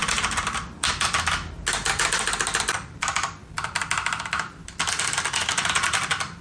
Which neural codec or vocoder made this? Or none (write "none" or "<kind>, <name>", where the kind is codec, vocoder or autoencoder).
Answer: none